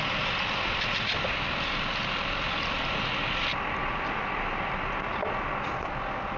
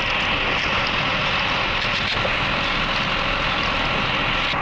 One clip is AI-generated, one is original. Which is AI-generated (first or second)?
first